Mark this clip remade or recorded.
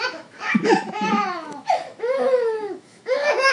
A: remade